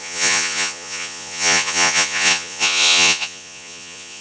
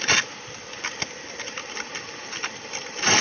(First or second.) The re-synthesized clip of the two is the first